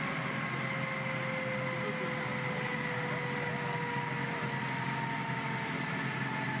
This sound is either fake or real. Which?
real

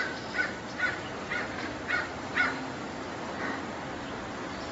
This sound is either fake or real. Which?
fake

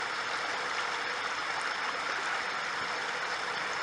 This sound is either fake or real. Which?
real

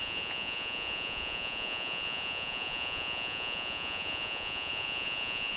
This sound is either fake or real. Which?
fake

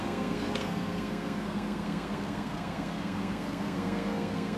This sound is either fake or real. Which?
fake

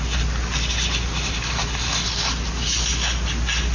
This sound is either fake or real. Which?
real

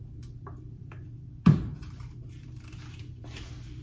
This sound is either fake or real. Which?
fake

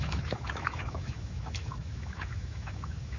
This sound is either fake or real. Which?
fake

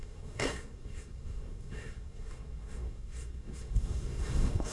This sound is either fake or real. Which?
fake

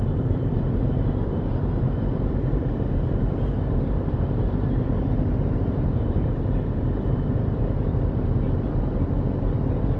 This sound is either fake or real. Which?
fake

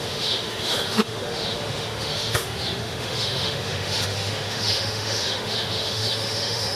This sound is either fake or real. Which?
fake